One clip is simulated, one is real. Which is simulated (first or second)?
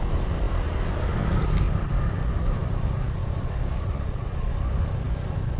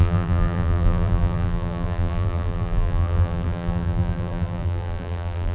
second